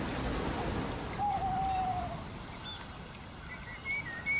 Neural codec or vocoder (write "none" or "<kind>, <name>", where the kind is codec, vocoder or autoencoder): none